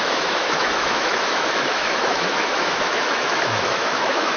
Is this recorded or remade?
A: remade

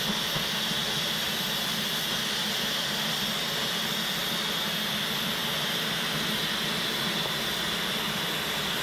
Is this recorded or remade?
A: recorded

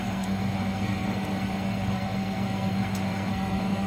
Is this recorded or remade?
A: remade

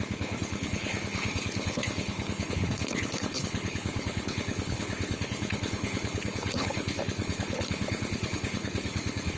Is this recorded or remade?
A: remade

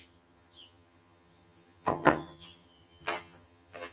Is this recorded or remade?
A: remade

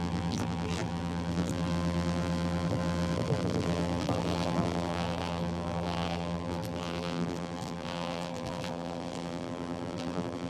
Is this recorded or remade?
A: remade